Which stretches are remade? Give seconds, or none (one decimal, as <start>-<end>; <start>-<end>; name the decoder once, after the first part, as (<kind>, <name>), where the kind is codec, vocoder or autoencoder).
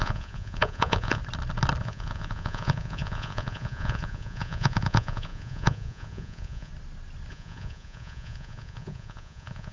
0.0-1.2 (vocoder, Vocos); 1.8-6.7; 7.3-9.7